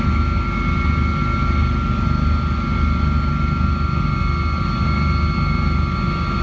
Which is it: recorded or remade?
recorded